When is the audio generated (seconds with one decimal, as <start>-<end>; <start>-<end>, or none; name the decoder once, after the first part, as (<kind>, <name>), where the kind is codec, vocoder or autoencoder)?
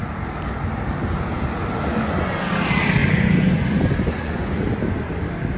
1.9-2.5 (vocoder, Vocos); 3.0-4.6